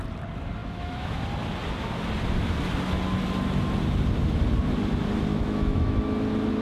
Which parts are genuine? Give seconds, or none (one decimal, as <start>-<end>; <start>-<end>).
0.0-0.6; 1.2-5.3; 6.0-6.6